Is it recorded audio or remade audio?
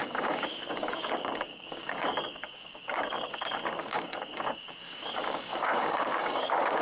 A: remade